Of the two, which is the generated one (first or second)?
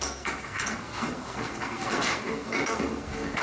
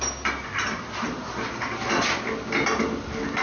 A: first